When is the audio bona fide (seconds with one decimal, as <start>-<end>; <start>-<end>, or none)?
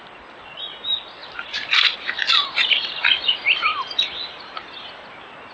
0.0-1.2; 3.2-3.7; 4.8-5.5